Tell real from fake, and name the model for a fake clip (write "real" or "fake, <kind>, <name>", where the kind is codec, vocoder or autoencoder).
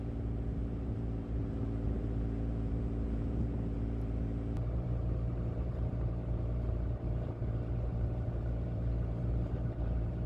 fake, vocoder, BigVGAN v2